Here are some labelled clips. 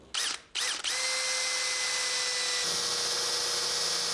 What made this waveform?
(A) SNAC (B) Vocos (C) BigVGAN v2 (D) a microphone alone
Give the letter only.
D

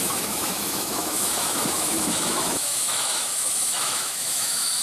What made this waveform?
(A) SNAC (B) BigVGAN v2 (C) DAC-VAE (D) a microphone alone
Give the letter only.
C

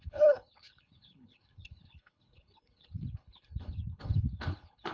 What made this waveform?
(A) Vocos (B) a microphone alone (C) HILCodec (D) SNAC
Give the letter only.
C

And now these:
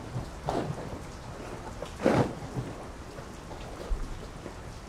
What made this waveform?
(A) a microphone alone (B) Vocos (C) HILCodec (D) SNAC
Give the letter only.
A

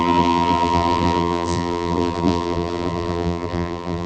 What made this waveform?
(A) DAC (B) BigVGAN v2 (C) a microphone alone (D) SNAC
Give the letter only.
B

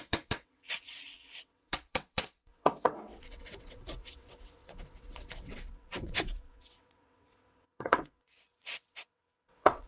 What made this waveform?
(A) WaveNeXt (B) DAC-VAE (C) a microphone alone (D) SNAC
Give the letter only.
A